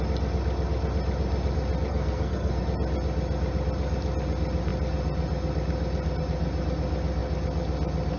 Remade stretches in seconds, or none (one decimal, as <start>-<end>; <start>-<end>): 1.9-2.6